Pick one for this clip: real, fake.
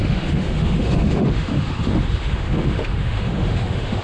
fake